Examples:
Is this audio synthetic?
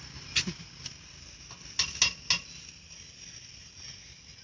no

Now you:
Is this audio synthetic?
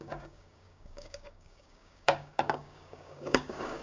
yes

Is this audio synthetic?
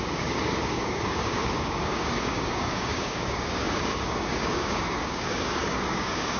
yes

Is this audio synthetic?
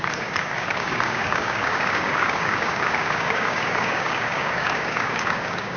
yes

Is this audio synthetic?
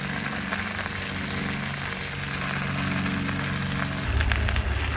no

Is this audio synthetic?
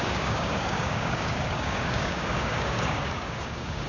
yes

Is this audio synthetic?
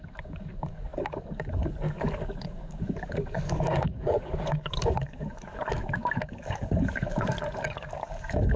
yes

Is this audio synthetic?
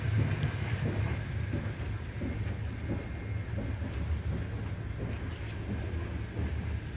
no